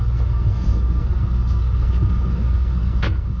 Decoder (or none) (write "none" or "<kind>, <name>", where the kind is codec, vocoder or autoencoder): codec, SNAC